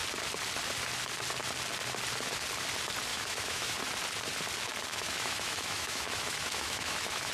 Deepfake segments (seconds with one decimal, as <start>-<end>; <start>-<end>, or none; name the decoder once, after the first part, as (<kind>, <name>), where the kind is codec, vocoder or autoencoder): 3.1-3.8 (autoencoder, DAC-VAE); 4.9-7.3